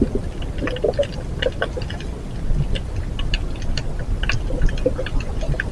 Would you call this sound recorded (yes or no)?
yes